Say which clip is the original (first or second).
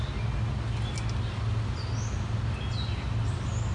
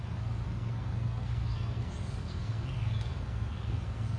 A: first